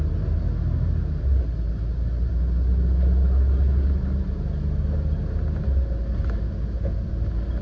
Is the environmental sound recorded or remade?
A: recorded